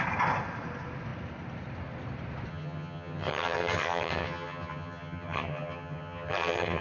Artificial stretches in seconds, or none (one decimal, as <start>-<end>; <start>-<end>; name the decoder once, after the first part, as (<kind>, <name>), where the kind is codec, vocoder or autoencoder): 2.5-6.8 (vocoder, HiFi-GAN)